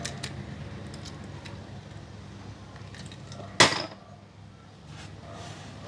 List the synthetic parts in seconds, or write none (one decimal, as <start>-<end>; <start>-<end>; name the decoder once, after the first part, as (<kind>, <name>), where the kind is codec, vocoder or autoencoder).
none